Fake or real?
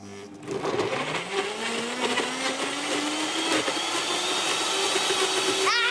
real